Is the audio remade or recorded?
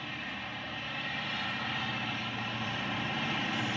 remade